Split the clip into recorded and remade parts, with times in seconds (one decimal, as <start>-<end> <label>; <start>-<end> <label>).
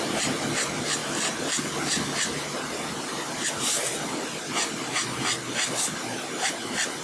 0.0-7.0 recorded